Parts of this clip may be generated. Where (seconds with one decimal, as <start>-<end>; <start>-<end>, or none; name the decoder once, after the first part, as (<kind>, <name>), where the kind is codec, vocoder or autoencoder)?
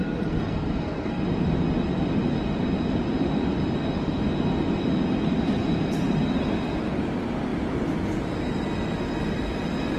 0.0-1.2 (codec, SNAC)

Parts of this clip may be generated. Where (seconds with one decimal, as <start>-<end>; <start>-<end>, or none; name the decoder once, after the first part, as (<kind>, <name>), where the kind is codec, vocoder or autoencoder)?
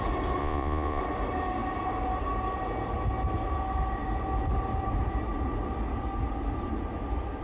0.4-1.0 (vocoder, Vocos)